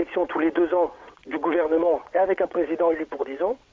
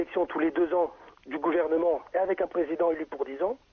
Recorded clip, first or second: second